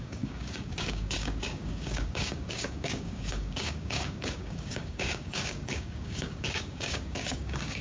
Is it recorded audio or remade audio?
remade